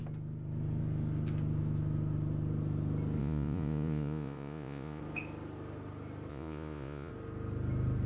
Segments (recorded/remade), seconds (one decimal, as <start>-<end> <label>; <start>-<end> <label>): 0.0-3.2 recorded; 3.2-5.0 remade; 5.0-6.3 recorded; 6.3-7.1 remade; 7.1-8.1 recorded